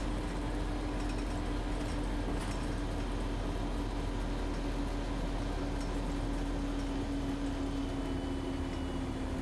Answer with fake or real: real